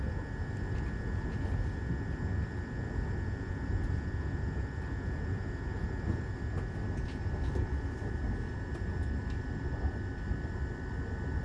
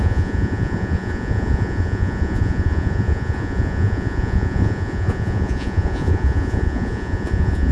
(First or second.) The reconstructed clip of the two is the second